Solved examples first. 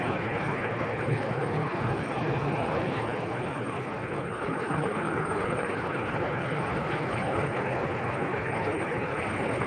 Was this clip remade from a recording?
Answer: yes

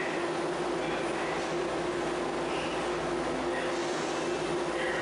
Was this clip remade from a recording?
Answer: no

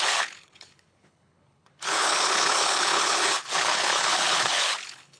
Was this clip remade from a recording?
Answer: yes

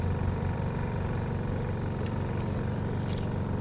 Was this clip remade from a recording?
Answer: no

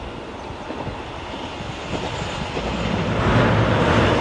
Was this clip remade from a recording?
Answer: no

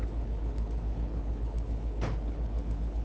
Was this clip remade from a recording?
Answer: yes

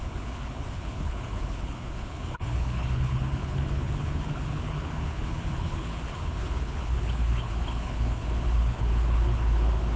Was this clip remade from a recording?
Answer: yes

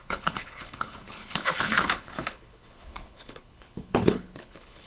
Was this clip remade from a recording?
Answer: yes